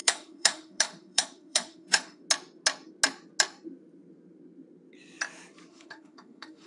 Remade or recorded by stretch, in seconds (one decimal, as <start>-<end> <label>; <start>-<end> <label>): 0.0-2.2 remade; 2.2-5.7 recorded; 5.7-6.7 remade